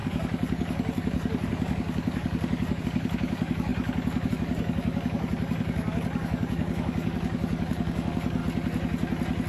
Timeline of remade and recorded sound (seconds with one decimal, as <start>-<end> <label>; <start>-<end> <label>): 0.0-8.4 remade; 8.4-9.5 recorded